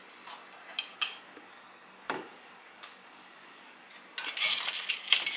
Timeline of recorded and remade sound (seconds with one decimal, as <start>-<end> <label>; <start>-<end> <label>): 0.0-0.9 recorded; 0.9-3.9 remade; 3.9-5.4 recorded